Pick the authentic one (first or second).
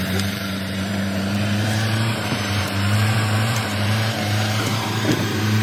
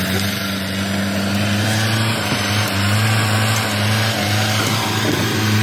second